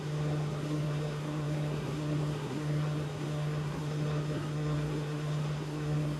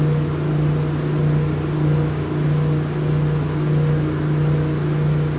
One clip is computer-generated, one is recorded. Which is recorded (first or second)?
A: second